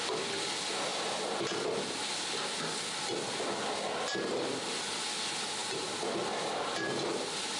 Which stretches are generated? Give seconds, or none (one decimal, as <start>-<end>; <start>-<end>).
none